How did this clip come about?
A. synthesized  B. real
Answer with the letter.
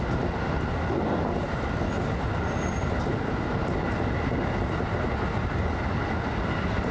B